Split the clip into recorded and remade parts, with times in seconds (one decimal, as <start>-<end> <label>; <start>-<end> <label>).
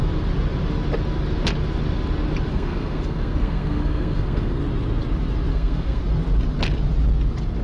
0.0-2.5 recorded; 2.5-4.6 remade; 4.6-5.5 recorded; 5.5-6.0 remade; 6.0-7.6 recorded